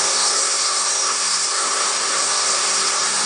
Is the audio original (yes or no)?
no